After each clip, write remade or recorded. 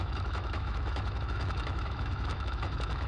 remade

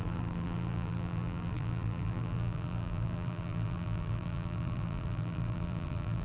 remade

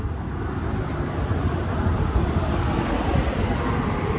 recorded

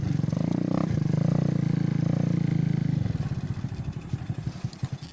recorded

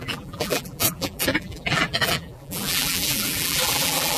remade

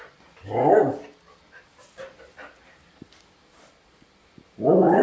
recorded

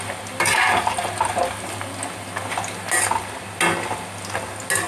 recorded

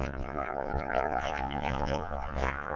remade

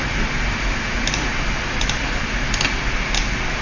recorded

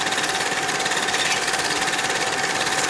recorded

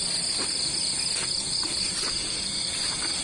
recorded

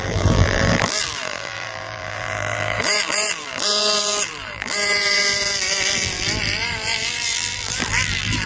remade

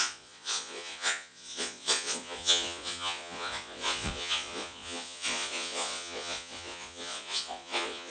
remade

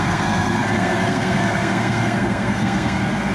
remade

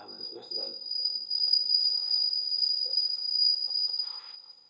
remade